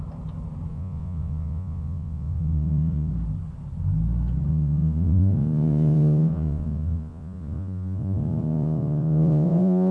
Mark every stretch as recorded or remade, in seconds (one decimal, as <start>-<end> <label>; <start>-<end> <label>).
0.0-0.7 recorded; 0.7-3.1 remade; 3.1-4.5 recorded; 4.5-9.9 remade